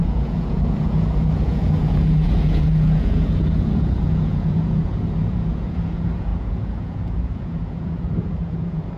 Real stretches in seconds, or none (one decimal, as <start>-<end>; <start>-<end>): none